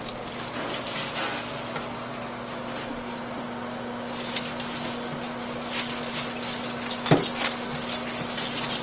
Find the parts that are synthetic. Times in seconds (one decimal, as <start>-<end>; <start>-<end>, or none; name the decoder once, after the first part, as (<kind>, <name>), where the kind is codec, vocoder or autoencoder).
none